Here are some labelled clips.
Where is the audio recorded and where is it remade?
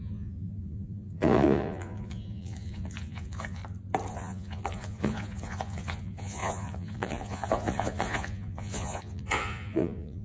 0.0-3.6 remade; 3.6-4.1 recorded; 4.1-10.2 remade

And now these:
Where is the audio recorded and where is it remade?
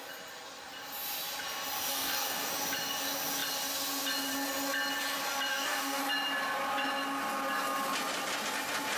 0.0-1.9 recorded; 1.9-2.5 remade; 2.5-5.5 recorded; 5.5-6.0 remade; 6.0-9.0 recorded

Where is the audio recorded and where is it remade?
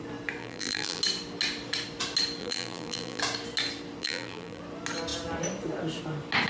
0.0-0.4 recorded; 0.4-1.0 remade; 1.0-2.4 recorded; 2.4-3.2 remade; 3.2-4.0 recorded; 4.0-4.6 remade; 4.6-6.5 recorded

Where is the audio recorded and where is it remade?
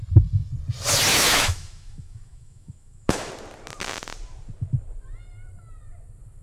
0.0-1.1 recorded; 1.1-3.3 remade; 3.3-6.4 recorded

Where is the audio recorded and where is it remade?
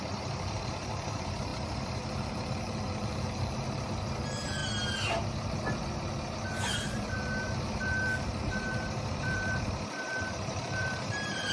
0.0-4.6 remade; 4.6-6.5 recorded; 6.5-11.5 remade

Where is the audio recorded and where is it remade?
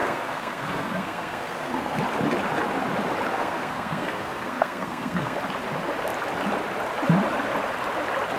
0.0-2.0 remade; 2.0-3.3 recorded; 3.3-5.4 remade; 5.4-8.4 recorded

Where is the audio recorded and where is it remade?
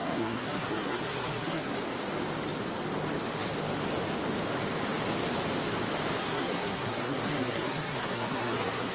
0.0-1.8 remade; 1.8-6.2 recorded; 6.2-8.9 remade